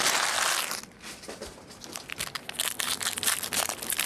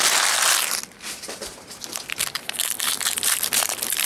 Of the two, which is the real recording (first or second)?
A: first